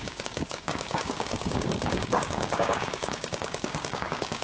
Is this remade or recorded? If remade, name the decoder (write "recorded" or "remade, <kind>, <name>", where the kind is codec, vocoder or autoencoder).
remade, codec, DAC